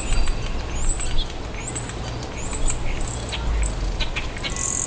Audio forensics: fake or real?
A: real